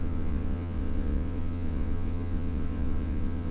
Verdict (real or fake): fake